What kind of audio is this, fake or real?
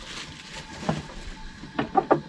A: real